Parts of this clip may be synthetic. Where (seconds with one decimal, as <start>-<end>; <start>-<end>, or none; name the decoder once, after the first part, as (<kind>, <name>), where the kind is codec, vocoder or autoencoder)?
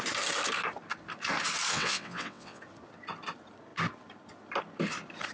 1.7-2.6 (vocoder, WaveNeXt)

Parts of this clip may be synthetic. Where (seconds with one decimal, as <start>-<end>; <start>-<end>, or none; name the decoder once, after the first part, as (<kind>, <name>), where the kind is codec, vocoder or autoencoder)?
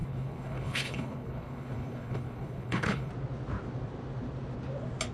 0.0-3.1 (codec, HILCodec)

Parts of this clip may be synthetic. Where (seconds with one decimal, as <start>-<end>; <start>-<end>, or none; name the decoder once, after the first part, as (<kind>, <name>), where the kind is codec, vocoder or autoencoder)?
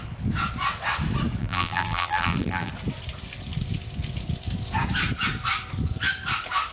1.4-2.7 (vocoder, BigVGAN v2)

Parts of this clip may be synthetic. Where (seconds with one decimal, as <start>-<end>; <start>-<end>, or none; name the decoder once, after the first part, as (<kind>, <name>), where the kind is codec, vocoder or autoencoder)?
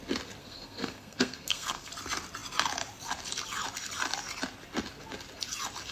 0.4-1.9 (codec, SNAC)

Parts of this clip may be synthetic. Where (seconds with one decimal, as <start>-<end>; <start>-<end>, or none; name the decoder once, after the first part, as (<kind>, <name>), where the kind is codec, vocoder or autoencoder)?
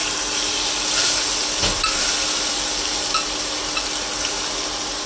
none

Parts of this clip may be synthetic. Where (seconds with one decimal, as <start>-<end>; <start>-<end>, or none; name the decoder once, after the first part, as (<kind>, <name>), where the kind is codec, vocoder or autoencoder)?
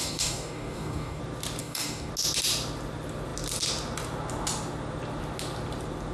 0.0-1.2 (codec, DAC); 1.6-2.1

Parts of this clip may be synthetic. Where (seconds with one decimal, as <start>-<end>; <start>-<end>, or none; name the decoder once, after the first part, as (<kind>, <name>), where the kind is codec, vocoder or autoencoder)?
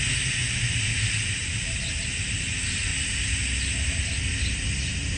none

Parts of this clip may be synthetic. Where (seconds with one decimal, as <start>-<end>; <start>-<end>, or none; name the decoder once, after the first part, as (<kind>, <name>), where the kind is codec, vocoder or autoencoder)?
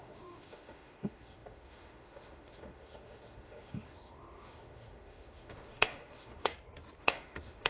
0.0-6.5 (autoencoder, DAC-VAE); 7.0-7.7